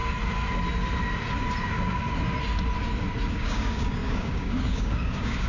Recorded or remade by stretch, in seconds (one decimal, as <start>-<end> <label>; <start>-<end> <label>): 0.0-3.3 recorded; 3.3-5.5 remade